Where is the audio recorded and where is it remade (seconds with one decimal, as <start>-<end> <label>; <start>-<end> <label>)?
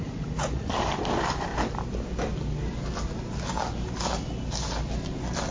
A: 0.0-0.7 remade; 0.7-5.5 recorded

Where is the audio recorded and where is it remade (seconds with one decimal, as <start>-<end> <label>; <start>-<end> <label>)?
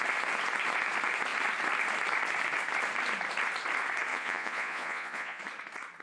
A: 0.0-4.1 recorded; 4.1-5.4 remade; 5.4-6.0 recorded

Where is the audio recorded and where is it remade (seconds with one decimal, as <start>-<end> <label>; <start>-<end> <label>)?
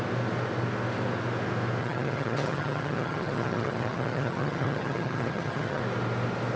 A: 0.0-1.8 recorded; 1.8-5.8 remade; 5.8-6.6 recorded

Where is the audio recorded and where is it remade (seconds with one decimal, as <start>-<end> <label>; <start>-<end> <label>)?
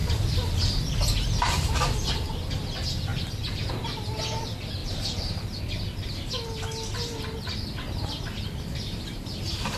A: 0.0-2.6 remade; 2.6-3.1 recorded; 3.1-3.7 remade; 3.7-4.8 recorded; 4.8-5.6 remade; 5.6-9.8 recorded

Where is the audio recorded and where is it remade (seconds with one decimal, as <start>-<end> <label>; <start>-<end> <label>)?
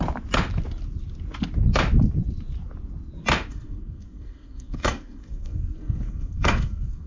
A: 0.0-3.5 recorded; 3.5-7.1 remade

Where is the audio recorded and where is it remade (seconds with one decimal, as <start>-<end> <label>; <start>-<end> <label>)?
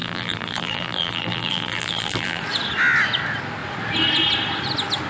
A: 0.0-2.4 remade; 2.4-5.1 recorded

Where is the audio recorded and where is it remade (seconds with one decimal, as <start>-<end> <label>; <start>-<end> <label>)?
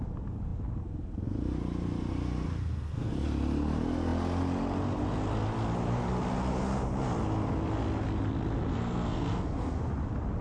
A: 0.0-2.6 recorded; 2.6-3.1 remade; 3.1-8.7 recorded; 8.7-9.8 remade; 9.8-10.4 recorded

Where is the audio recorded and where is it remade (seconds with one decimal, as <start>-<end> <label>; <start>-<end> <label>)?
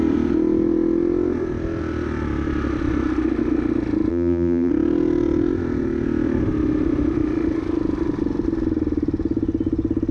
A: 0.0-4.1 recorded; 4.1-4.7 remade; 4.7-10.1 recorded